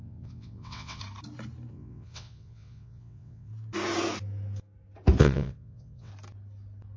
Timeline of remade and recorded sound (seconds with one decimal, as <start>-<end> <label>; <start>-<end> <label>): 0.0-1.0 remade; 1.0-1.7 recorded; 1.7-3.5 remade; 3.5-5.2 recorded; 5.2-6.1 remade; 6.1-7.0 recorded